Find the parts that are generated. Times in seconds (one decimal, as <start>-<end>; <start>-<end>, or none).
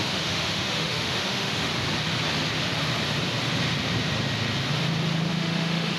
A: 0.0-1.7; 5.3-6.0